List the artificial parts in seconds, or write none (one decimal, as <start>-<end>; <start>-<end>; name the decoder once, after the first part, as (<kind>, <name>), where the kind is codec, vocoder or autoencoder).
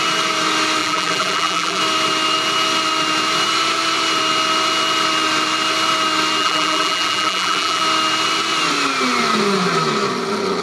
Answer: 0.8-1.8 (vocoder, BigVGAN v2); 6.4-7.8